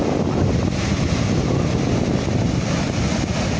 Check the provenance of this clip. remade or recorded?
recorded